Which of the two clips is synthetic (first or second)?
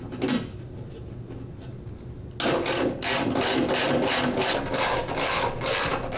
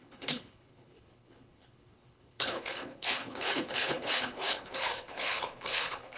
second